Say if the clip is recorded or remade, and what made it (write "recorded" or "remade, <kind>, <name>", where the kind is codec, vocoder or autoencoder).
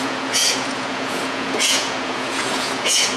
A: remade, vocoder, Vocos